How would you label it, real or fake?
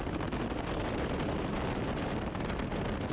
real